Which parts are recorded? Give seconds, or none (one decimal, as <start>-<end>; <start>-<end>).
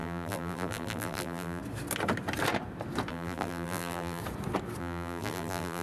1.6-3.1; 4.2-4.8